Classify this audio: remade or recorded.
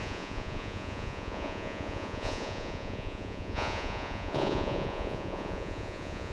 remade